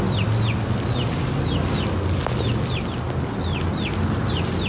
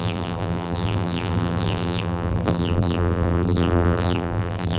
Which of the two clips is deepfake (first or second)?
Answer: second